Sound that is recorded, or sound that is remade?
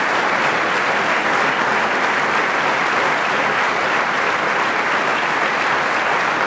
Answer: recorded